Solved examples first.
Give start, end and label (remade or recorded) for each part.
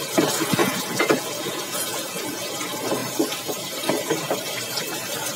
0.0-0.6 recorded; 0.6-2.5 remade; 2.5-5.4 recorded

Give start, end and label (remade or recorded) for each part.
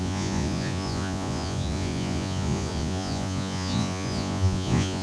0.0-5.0 remade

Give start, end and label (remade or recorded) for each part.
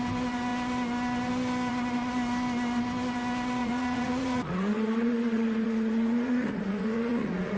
0.0-3.6 recorded; 3.6-7.6 remade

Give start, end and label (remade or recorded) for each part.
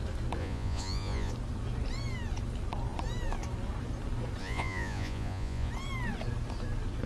0.0-0.4 recorded; 0.4-1.3 remade; 1.3-4.4 recorded; 4.4-5.7 remade; 5.7-7.1 recorded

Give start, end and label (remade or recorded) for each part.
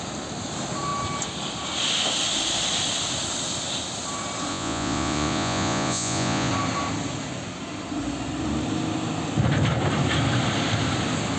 0.0-4.5 recorded; 4.5-6.5 remade; 6.5-11.4 recorded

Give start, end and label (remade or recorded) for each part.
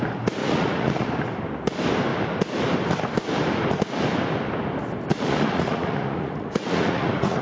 0.0-0.4 recorded; 0.4-1.1 remade; 1.1-5.1 recorded; 5.1-7.4 remade